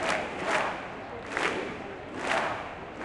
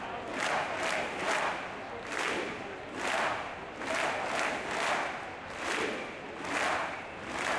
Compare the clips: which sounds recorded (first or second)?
second